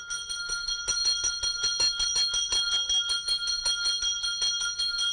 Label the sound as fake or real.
real